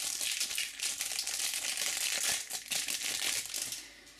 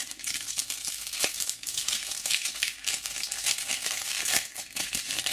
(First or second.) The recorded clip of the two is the first